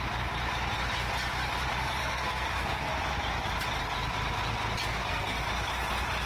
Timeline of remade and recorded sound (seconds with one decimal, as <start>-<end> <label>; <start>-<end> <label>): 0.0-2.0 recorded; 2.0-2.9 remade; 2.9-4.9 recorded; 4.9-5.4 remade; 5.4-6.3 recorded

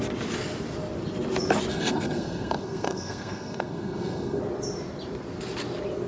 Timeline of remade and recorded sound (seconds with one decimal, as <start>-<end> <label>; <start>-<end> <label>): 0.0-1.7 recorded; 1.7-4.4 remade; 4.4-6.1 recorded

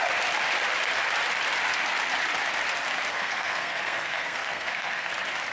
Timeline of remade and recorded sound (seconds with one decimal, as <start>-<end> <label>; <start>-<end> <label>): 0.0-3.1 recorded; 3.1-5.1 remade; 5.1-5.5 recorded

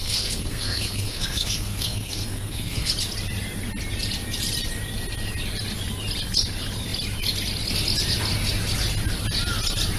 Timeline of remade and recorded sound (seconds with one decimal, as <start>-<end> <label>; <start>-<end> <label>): 0.0-2.9 remade; 2.9-10.0 recorded

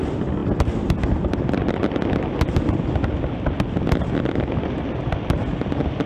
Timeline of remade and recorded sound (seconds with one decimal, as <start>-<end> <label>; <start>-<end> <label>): 0.0-6.1 recorded